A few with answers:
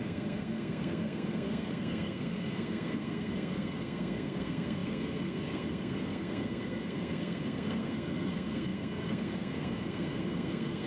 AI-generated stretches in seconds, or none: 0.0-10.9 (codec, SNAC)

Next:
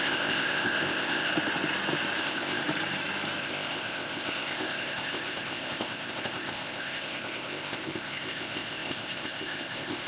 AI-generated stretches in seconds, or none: 0.0-1.3 (codec, ZipCodec); 2.2-2.6; 3.4-10.1

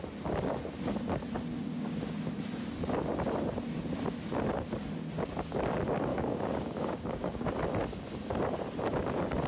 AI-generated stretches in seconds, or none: 1.6-2.3 (codec, DAC); 6.1-7.5

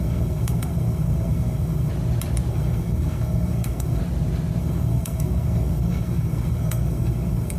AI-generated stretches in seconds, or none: 0.0-1.9 (codec, SNAC); 2.5-4.0; 4.6-7.6

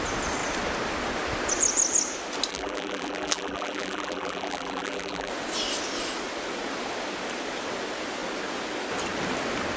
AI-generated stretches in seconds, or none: 2.5-5.3 (vocoder, BigVGAN v2)

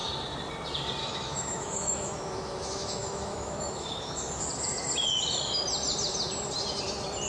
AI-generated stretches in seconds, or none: 1.0-4.4 (autoencoder, DAC-VAE)